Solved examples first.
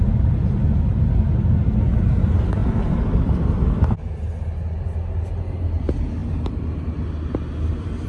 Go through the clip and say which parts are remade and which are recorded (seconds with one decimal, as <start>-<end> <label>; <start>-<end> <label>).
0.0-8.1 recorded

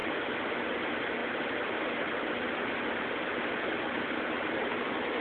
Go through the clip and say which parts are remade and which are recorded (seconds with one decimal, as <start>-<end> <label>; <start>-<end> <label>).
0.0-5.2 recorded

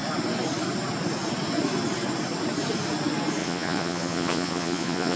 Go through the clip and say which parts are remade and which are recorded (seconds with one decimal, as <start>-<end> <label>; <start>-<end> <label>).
0.0-3.4 recorded; 3.4-5.2 remade

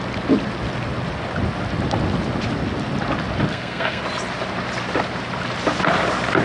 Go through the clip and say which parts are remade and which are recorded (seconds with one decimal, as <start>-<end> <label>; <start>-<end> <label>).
0.0-3.5 recorded; 3.5-4.0 remade; 4.0-6.4 recorded

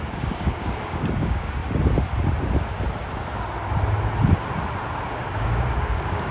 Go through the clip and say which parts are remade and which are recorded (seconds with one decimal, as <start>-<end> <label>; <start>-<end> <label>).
0.0-1.6 remade; 1.6-5.1 recorded; 5.1-6.3 remade